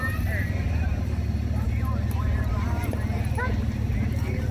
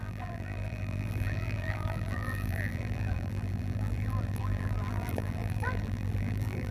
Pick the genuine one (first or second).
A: first